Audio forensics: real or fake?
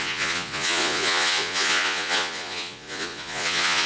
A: fake